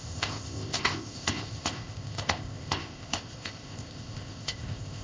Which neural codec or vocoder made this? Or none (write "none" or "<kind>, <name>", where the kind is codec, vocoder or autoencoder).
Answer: codec, ZipCodec